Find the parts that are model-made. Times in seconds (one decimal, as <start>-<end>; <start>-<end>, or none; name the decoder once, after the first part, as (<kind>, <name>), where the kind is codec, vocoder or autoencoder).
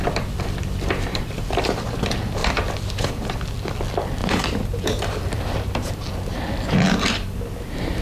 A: 1.1-1.9 (vocoder, BigVGAN v2); 2.4-3.1; 4.2-6.1